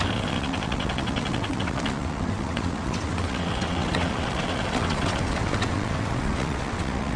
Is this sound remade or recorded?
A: remade